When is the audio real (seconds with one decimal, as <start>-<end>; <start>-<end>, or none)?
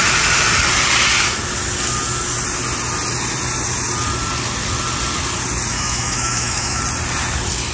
0.0-5.7; 6.8-7.7